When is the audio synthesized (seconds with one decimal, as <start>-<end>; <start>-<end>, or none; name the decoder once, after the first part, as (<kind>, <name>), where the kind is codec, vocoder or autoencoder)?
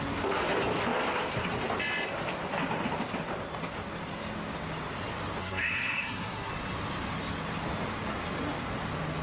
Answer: 5.4-6.5 (codec, SNAC)